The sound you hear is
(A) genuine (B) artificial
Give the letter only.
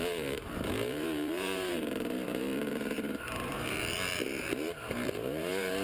B